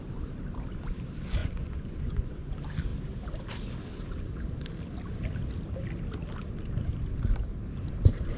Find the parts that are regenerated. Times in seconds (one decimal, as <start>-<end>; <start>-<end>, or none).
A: 1.4-2.5